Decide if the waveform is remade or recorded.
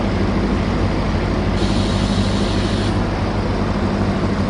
recorded